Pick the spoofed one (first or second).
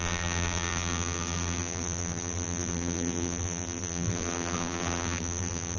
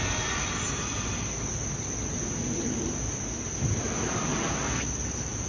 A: first